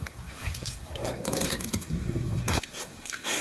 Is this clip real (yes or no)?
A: no